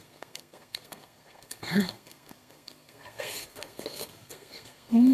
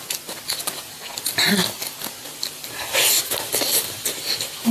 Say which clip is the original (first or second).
second